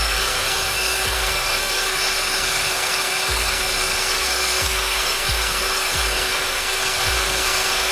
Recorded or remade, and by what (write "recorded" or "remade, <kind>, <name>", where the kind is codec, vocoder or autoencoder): remade, codec, SNAC